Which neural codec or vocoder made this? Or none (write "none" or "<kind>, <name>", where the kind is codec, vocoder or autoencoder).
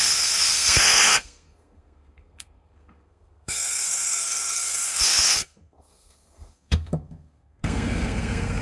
codec, SNAC